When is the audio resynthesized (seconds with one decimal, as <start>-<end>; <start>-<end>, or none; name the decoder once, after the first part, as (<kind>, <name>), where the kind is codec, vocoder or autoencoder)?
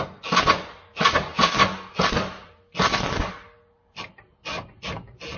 none